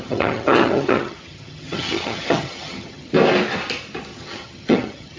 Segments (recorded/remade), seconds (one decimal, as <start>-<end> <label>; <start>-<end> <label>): 0.0-3.1 remade; 3.1-4.1 recorded; 4.1-5.2 remade